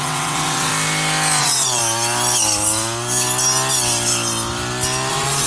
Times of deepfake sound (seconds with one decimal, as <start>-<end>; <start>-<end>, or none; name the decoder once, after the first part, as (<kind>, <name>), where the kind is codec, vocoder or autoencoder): 0.0-0.7 (vocoder, WaveNeXt); 1.4-1.8; 5.1-5.5